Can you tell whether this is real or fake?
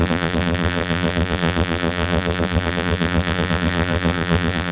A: fake